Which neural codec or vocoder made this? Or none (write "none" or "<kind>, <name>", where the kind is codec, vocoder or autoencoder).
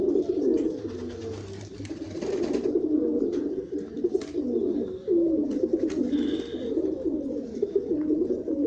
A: none